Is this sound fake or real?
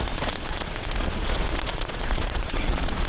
fake